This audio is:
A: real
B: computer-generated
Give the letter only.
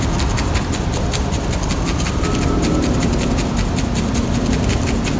A